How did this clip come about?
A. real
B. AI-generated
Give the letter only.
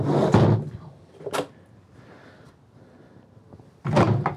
A